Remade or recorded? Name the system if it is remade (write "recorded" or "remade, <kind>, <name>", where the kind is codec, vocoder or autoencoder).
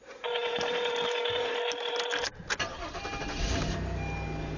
recorded